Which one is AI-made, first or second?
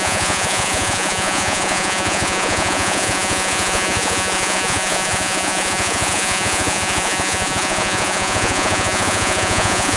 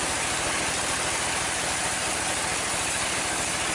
first